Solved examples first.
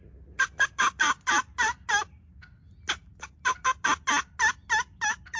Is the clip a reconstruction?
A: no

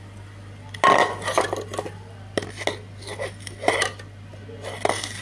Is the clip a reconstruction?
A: no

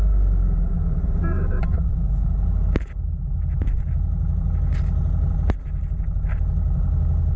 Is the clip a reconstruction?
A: no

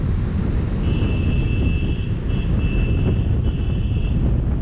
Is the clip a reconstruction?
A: no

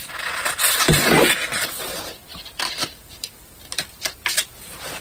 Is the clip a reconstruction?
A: no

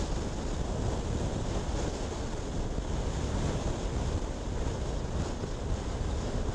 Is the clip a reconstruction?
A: no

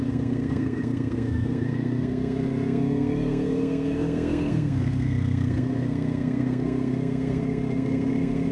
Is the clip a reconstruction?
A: yes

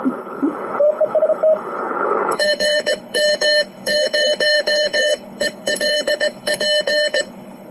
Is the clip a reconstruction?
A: yes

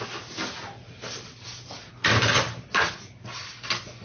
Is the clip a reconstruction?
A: no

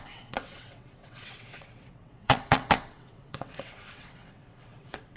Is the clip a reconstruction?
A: yes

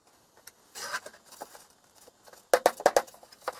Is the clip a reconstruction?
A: no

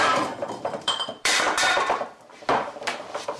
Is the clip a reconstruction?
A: yes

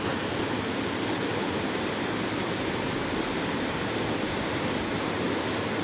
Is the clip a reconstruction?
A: no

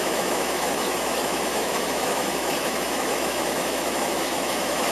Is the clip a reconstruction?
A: yes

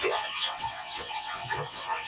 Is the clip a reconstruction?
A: yes